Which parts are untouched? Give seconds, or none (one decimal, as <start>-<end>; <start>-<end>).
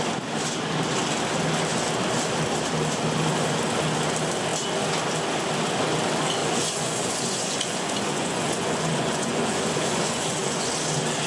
0.0-6.4; 10.7-11.3